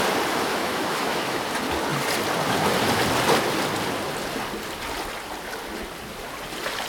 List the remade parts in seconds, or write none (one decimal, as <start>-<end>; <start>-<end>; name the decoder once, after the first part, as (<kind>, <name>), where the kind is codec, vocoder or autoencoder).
0.5-1.4 (autoencoder, DAC-VAE)